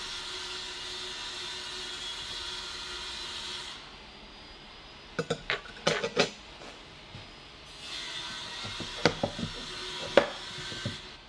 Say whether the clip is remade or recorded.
recorded